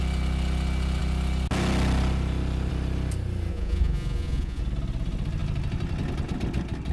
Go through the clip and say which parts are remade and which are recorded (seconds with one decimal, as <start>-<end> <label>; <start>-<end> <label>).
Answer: 0.0-3.5 recorded; 3.5-4.6 remade; 4.6-6.9 recorded